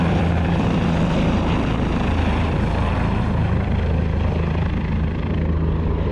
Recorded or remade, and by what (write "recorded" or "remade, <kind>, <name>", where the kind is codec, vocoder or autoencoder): remade, vocoder, BigVGAN v2